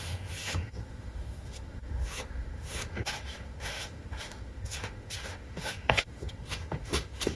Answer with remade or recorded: remade